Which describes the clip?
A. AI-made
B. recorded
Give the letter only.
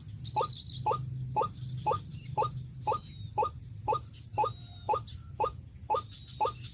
B